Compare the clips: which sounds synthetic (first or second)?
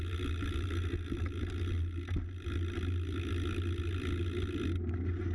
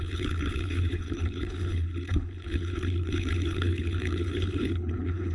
second